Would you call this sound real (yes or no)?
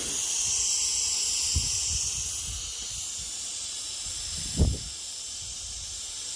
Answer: yes